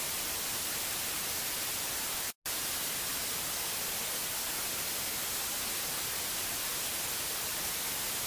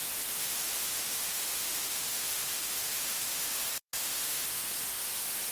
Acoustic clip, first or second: first